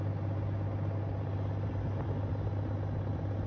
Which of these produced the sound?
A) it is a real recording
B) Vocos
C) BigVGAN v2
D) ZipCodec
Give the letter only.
A